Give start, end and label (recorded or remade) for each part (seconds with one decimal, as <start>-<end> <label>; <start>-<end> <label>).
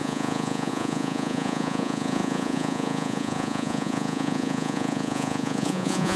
0.0-6.2 remade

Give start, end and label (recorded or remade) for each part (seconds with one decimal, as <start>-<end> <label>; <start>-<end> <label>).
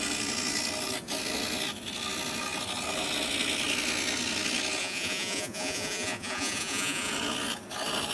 0.0-4.8 recorded; 4.8-7.1 remade; 7.1-8.1 recorded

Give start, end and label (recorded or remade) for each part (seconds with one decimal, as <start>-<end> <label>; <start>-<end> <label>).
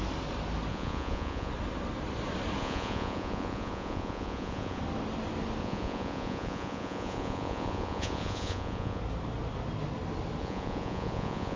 0.0-0.7 recorded; 0.7-1.5 remade; 1.5-2.6 recorded; 2.6-4.8 remade; 4.8-5.6 recorded; 5.6-9.0 remade; 9.0-10.4 recorded; 10.4-11.6 remade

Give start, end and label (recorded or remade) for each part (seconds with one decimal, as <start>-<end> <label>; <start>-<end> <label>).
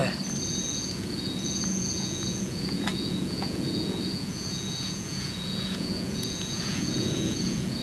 0.0-0.5 recorded; 0.5-7.8 remade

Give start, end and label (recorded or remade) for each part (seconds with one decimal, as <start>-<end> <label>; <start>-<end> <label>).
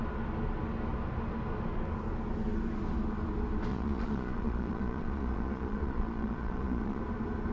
0.0-3.7 recorded; 3.7-7.0 remade; 7.0-7.5 recorded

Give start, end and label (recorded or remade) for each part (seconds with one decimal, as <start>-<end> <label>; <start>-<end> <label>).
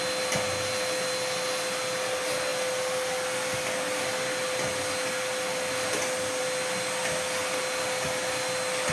0.0-8.9 recorded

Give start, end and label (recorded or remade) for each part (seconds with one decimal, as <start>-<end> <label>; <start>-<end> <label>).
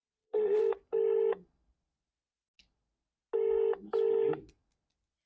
0.0-0.6 remade; 0.6-5.3 recorded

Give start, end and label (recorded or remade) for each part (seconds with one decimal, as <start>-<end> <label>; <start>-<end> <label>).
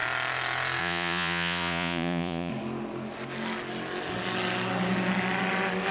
0.0-0.8 recorded; 0.8-2.5 remade; 2.5-5.9 recorded